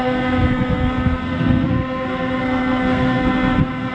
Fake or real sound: fake